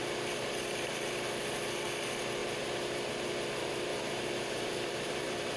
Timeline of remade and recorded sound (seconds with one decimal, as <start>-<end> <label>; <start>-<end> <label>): 0.0-3.9 recorded; 3.9-5.6 remade

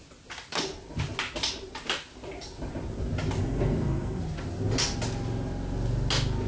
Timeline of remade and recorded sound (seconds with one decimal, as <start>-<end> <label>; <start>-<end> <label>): 0.0-3.4 recorded; 3.4-4.2 remade; 4.2-6.5 recorded

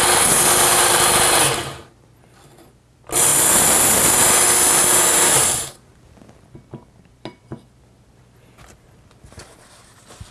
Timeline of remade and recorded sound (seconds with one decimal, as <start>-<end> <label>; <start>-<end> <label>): 0.0-10.3 recorded

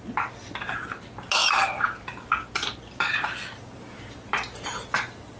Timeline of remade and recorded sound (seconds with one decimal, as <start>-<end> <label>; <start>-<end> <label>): 0.0-5.4 recorded

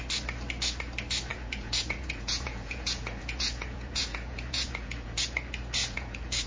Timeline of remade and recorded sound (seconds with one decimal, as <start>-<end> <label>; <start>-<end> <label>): 0.0-1.3 recorded; 1.3-5.2 remade; 5.2-5.8 recorded; 5.8-6.5 remade

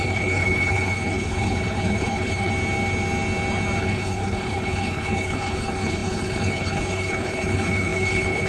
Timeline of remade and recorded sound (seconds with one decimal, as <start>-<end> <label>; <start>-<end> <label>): 0.0-2.5 remade; 2.5-3.8 recorded; 3.8-8.5 remade